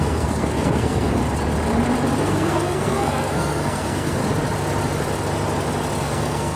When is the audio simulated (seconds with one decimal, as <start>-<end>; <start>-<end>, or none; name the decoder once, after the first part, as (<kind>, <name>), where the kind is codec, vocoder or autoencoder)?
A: 0.0-1.2 (codec, SNAC); 2.2-4.2; 6.0-6.6